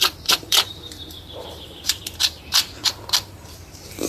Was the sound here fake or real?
fake